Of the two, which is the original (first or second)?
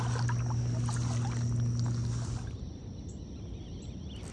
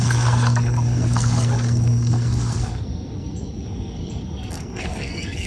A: first